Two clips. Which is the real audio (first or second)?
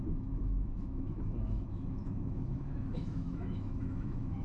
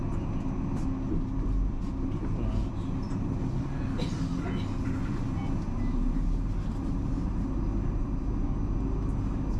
second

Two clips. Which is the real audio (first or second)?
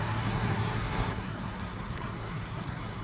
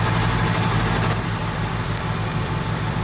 second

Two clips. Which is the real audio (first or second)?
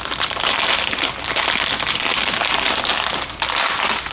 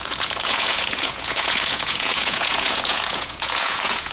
first